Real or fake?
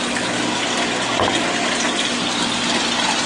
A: real